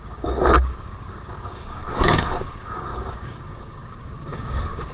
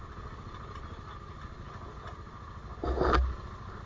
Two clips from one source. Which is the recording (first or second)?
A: second